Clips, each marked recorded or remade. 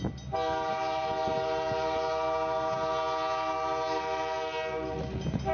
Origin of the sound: recorded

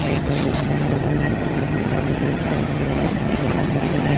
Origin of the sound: remade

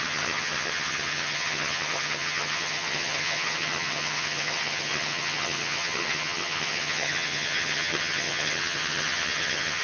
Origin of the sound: remade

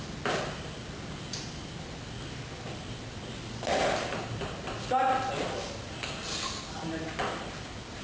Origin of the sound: recorded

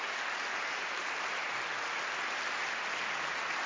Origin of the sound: recorded